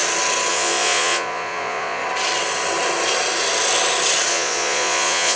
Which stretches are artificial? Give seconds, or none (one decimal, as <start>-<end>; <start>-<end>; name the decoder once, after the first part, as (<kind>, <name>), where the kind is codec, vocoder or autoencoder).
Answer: 0.5-2.0 (vocoder, Vocos); 4.3-5.4